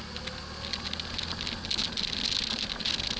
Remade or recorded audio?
recorded